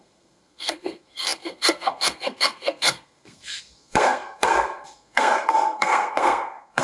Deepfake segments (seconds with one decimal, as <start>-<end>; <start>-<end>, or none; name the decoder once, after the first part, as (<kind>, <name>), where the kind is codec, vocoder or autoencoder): 0.0-6.8 (codec, SNAC)